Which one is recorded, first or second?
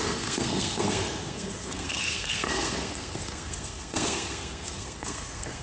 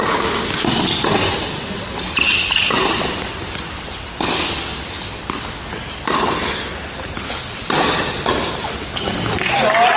second